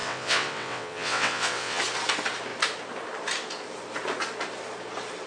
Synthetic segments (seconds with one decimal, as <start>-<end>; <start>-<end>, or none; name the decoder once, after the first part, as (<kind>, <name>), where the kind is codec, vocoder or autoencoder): 0.0-1.8 (vocoder, WaveNeXt)